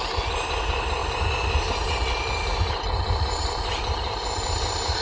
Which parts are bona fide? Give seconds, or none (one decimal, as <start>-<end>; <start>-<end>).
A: 1.0-1.6